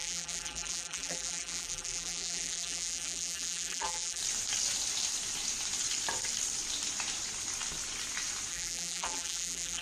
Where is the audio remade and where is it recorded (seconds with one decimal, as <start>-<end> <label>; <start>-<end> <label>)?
0.0-4.2 remade; 4.2-8.5 recorded; 8.5-9.8 remade